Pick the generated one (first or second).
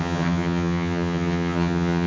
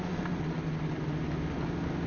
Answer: first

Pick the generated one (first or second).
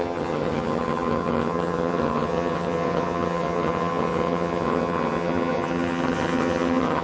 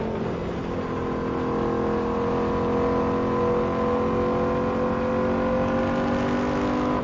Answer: first